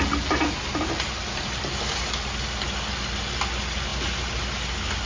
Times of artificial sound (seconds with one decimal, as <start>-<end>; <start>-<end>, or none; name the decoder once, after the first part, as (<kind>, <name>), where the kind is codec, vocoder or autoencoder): none